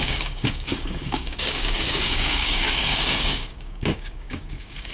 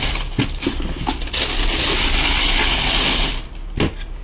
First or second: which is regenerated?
first